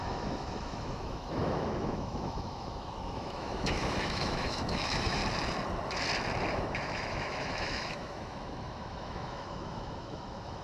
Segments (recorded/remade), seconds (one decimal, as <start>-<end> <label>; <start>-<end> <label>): 0.0-5.2 remade; 5.2-6.5 recorded; 6.5-10.6 remade